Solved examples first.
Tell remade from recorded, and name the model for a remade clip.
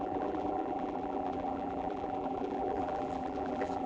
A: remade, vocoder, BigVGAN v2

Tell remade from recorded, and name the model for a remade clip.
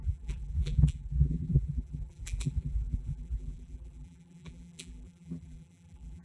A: remade, vocoder, BigVGAN v2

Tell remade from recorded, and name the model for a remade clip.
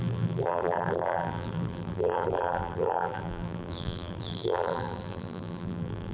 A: remade, vocoder, BigVGAN v2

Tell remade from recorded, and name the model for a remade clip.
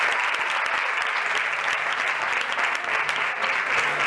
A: recorded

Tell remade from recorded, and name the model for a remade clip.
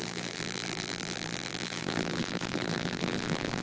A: remade, vocoder, BigVGAN v2